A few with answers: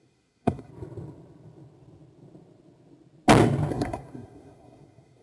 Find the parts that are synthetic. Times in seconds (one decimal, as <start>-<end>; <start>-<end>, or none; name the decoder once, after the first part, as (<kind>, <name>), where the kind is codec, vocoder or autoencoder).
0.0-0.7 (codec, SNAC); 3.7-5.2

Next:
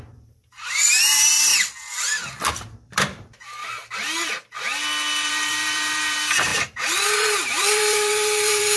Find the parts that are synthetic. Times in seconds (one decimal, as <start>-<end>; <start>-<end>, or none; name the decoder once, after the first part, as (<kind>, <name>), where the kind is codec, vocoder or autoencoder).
0.0-1.5 (vocoder, BigVGAN v2); 2.5-3.6; 5.3-8.8

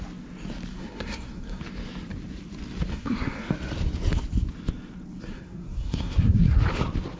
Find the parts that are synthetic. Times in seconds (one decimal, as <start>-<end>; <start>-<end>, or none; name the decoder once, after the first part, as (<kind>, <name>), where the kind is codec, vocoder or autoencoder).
0.7-1.6 (codec, SNAC); 2.9-3.5; 5.3-6.6

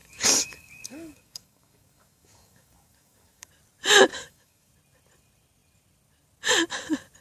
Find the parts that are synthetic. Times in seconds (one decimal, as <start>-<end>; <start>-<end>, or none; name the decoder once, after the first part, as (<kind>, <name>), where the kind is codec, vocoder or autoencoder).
0.0-3.5 (codec, DAC); 4.1-4.7

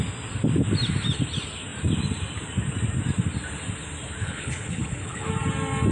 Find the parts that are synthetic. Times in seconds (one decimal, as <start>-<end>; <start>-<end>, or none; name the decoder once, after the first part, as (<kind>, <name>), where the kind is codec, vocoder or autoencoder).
4.2-5.3 (codec, HILCodec)

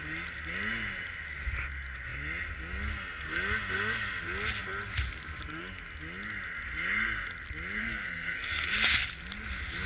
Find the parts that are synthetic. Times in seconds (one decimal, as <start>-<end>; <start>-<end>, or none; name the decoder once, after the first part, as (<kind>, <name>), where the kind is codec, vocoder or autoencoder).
7.8-8.7 (codec, SNAC)

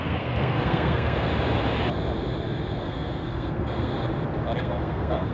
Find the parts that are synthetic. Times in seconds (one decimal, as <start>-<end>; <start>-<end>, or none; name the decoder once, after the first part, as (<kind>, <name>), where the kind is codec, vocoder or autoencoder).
0.0-1.3 (codec, SNAC); 2.8-3.9; 4.6-5.3